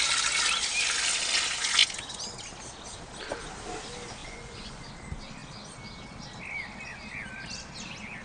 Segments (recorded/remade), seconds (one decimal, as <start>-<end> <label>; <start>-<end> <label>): 0.0-4.2 recorded; 4.2-4.9 remade; 4.9-8.2 recorded